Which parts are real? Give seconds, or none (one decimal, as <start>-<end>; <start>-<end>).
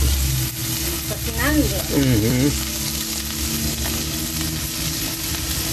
0.0-5.7